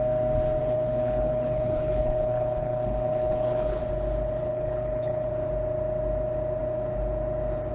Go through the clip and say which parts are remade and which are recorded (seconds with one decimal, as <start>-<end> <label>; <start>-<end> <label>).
0.0-0.6 recorded; 0.6-3.8 remade; 3.8-4.4 recorded; 4.4-5.3 remade; 5.3-7.7 recorded

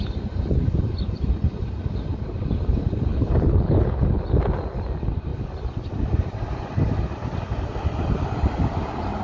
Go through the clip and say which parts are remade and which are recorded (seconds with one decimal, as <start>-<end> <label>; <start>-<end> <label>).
0.0-3.1 recorded; 3.1-4.2 remade; 4.2-9.2 recorded

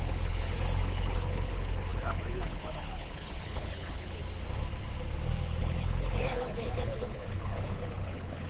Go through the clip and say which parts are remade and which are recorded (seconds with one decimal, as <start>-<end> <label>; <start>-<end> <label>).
0.0-4.2 remade; 4.2-5.6 recorded; 5.6-8.5 remade

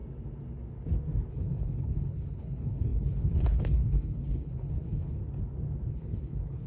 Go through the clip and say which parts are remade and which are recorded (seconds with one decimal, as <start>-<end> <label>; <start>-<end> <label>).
0.0-1.3 recorded; 1.3-5.2 remade; 5.2-5.9 recorded; 5.9-6.7 remade

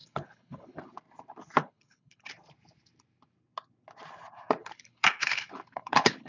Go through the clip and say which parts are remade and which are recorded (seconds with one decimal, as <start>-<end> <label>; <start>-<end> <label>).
0.0-0.9 remade; 0.9-1.6 recorded; 1.6-2.3 remade; 2.3-4.6 recorded; 4.6-6.3 remade